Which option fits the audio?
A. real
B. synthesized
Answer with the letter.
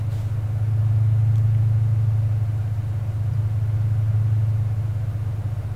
A